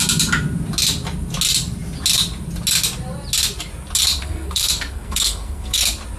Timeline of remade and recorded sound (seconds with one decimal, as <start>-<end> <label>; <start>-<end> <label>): 0.0-4.2 recorded; 4.2-5.8 remade; 5.8-6.2 recorded